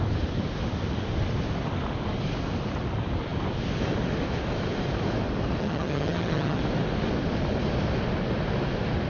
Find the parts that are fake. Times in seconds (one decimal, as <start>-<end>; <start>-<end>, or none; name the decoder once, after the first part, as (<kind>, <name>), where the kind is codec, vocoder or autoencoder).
5.6-6.6 (vocoder, HiFi-GAN)

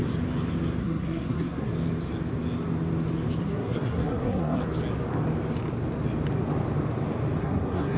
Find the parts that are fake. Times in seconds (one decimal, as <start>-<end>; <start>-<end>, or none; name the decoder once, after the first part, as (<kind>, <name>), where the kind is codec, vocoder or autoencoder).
0.8-1.7 (codec, SNAC); 3.4-4.6; 7.4-8.0